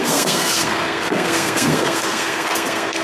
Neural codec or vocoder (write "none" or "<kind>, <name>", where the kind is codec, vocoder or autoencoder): codec, SNAC